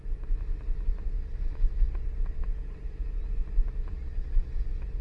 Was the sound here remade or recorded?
recorded